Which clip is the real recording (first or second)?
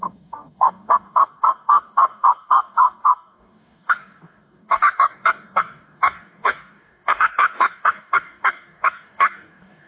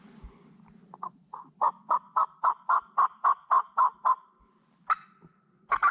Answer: second